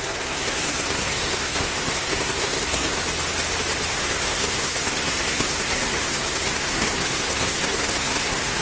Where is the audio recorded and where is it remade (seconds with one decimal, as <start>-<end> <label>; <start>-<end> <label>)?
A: 0.0-3.0 remade; 3.0-3.9 recorded; 3.9-8.6 remade